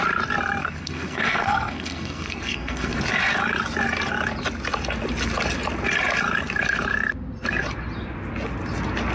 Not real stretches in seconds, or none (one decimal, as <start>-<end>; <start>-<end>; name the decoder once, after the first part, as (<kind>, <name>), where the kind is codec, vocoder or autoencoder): 0.6-3.0 (codec, SNAC)